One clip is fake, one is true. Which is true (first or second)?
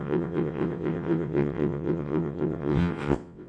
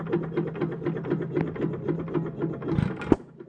second